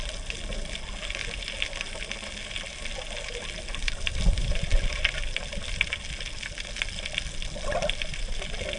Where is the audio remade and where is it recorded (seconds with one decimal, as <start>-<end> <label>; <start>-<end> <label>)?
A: 0.0-3.8 recorded; 3.8-4.9 remade; 4.9-8.8 recorded